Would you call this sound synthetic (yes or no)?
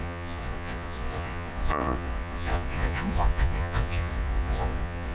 yes